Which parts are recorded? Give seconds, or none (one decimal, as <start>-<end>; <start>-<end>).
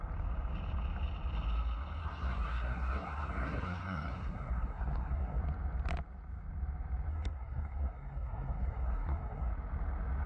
0.0-2.0; 5.4-7.1; 9.5-10.3